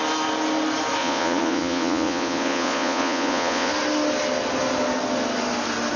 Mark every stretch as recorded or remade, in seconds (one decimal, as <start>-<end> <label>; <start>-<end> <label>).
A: 0.0-1.0 recorded; 1.0-3.7 remade; 3.7-6.0 recorded